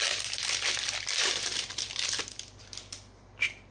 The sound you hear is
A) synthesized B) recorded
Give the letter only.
A